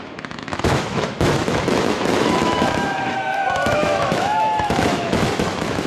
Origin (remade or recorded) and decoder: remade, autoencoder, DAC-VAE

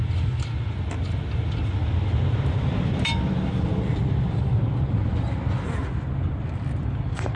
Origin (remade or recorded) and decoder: recorded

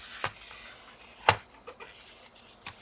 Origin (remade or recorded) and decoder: recorded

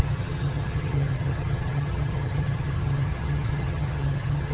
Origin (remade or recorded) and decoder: remade, vocoder, HiFi-GAN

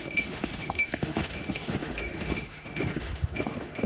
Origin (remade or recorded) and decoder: remade, autoencoder, DAC-VAE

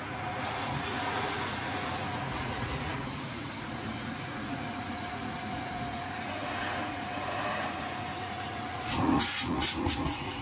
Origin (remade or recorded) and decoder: remade, vocoder, Vocos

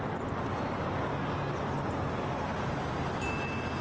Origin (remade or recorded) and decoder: recorded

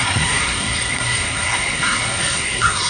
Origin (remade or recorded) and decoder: remade, codec, SNAC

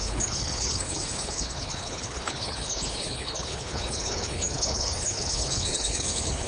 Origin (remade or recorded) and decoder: remade, codec, HILCodec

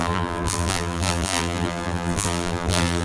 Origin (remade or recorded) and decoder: remade, vocoder, BigVGAN v2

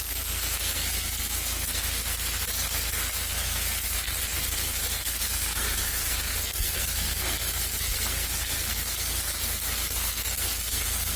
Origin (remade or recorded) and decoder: remade, codec, SNAC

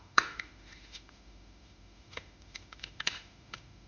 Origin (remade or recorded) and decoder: remade, autoencoder, DAC-VAE